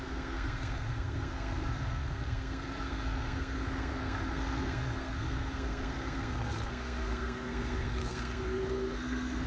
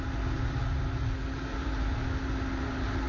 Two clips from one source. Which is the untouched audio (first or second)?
second